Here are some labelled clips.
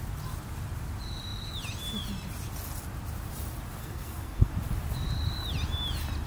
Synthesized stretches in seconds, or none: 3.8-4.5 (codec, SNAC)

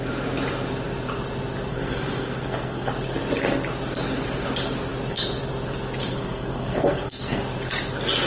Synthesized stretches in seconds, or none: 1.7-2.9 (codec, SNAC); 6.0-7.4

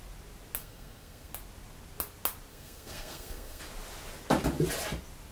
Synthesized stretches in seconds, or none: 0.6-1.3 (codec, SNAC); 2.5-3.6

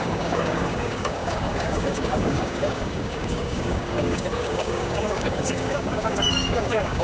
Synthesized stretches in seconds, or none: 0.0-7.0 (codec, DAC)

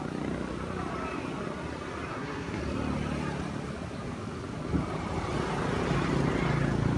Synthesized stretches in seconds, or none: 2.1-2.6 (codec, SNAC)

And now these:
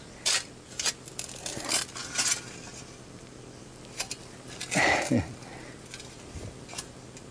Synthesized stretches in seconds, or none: none

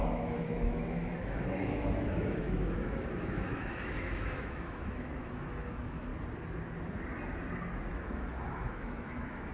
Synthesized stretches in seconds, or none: 0.0-6.1 (autoencoder, DAC-VAE); 8.0-9.5

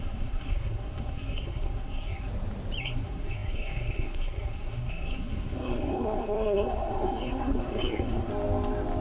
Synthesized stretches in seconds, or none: 0.0-2.3 (codec, SNAC); 2.8-8.3